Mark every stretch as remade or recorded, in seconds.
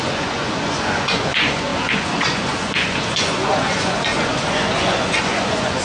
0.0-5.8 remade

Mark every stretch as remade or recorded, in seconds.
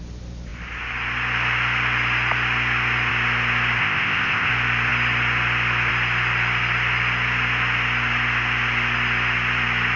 0.0-3.8 recorded; 3.8-4.5 remade; 4.5-10.0 recorded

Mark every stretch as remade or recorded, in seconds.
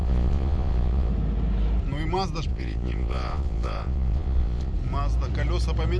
0.0-1.1 remade; 1.1-2.5 recorded; 2.5-4.7 remade; 4.7-6.0 recorded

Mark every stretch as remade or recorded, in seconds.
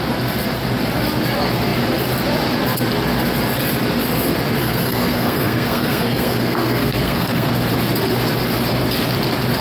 0.0-4.6 recorded; 4.6-7.5 remade; 7.5-9.6 recorded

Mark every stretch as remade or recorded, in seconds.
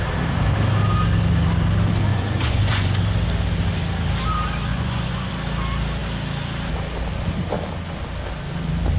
0.0-2.1 recorded; 2.1-3.0 remade; 3.0-4.7 recorded; 4.7-5.3 remade; 5.3-9.0 recorded